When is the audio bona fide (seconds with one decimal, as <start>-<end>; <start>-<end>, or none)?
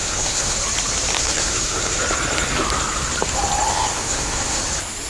0.6-1.2; 2.0-3.7; 4.6-5.1